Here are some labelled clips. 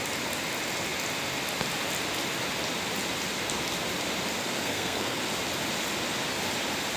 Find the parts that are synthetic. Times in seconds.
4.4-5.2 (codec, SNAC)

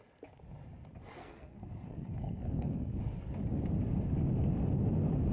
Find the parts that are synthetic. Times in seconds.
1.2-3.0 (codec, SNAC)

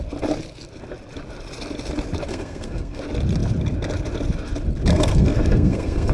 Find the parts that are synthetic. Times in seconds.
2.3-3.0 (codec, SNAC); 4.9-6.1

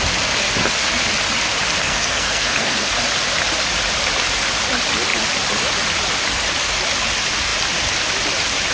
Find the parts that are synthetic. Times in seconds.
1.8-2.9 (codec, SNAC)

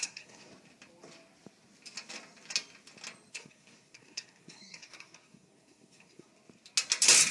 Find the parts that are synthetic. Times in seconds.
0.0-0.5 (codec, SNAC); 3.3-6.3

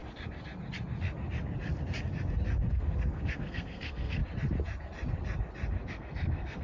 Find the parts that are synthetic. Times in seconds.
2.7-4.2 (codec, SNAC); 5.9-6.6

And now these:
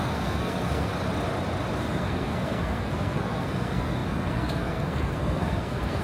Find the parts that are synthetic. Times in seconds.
0.0-0.9 (codec, SNAC); 1.8-6.0

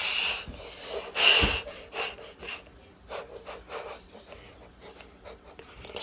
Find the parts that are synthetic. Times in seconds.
none